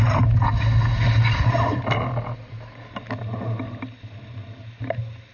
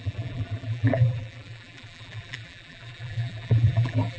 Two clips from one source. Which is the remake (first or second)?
second